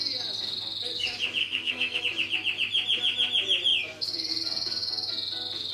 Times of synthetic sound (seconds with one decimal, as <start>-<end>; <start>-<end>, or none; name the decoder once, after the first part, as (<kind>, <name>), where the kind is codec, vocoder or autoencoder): 1.4-2.0 (codec, SNAC)